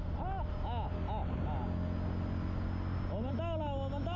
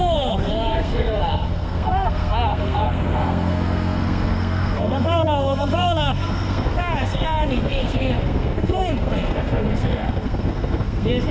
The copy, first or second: second